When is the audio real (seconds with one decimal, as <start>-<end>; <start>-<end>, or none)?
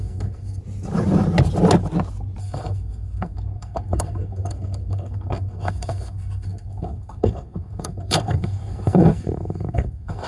0.6-2.4